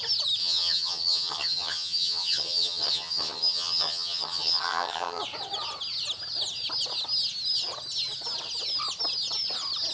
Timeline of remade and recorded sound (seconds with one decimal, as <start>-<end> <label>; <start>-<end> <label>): 0.0-0.4 recorded; 0.4-5.2 remade; 5.2-9.9 recorded